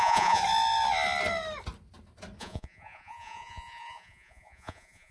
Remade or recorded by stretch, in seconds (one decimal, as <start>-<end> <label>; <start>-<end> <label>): 0.0-0.4 remade; 0.4-2.4 recorded; 2.4-5.1 remade